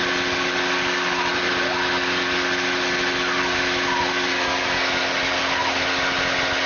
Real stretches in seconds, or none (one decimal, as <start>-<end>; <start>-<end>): 0.0-6.7